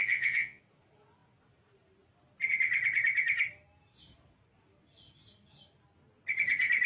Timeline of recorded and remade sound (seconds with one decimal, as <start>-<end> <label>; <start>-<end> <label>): 0.0-0.6 remade; 0.6-6.9 recorded